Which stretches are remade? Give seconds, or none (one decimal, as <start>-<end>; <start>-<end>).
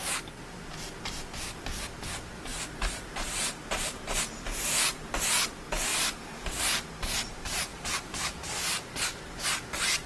2.5-5.2; 5.9-6.6; 7.7-8.4